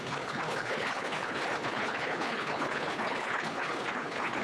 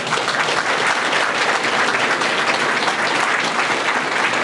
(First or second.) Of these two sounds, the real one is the second